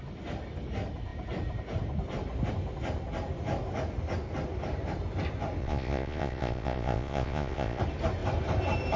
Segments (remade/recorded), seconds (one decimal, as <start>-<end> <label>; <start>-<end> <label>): 0.0-5.6 recorded; 5.6-7.8 remade; 7.8-9.0 recorded